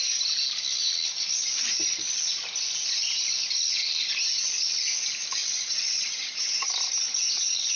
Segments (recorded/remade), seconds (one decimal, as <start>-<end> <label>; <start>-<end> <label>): 0.0-5.4 recorded; 5.4-6.7 remade; 6.7-7.8 recorded